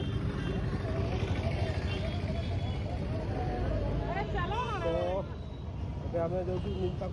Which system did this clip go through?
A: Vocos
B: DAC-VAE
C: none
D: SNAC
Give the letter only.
C